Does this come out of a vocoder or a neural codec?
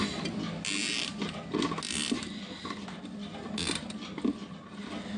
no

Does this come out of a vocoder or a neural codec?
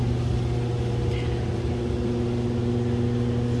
no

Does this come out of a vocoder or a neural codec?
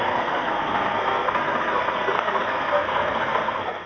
yes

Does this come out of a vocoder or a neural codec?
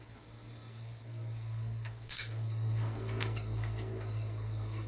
yes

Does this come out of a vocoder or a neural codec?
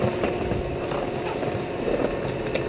no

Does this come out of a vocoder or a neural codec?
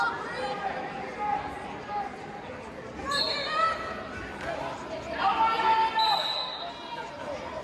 no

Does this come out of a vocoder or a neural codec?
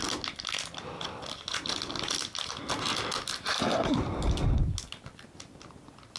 no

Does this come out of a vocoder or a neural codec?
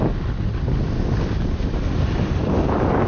no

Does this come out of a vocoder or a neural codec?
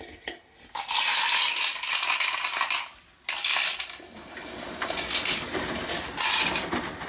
no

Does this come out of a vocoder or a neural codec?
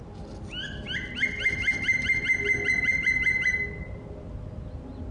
no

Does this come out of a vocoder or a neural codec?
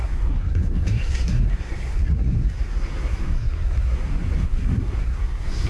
yes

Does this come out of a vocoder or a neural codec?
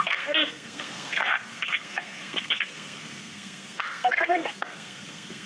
yes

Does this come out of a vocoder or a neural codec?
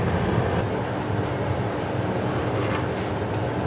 no